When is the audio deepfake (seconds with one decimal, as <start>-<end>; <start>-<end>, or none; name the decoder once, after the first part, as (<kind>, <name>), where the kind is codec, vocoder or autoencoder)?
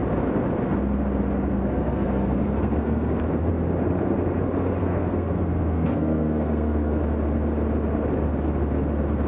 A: 1.6-3.2 (codec, SNAC); 4.8-7.0